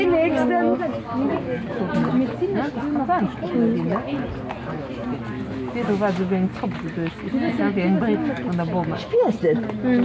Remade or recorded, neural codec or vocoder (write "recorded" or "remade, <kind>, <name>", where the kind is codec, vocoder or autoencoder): recorded